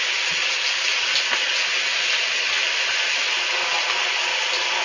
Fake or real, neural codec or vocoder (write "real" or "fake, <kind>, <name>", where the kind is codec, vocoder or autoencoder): real